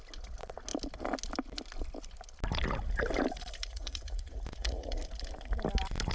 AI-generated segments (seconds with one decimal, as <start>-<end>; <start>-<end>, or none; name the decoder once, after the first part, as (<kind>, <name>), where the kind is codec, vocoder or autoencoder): 3.6-5.0 (vocoder, Vocos)

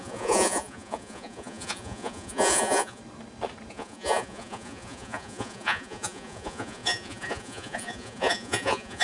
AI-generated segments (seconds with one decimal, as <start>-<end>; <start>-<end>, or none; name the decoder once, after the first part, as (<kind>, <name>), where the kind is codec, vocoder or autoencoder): 0.0-3.0 (vocoder, Vocos); 3.7-9.0